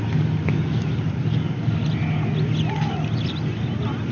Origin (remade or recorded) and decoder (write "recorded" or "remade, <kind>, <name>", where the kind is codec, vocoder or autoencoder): recorded